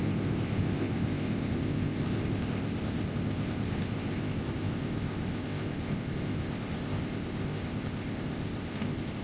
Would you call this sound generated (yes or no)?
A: yes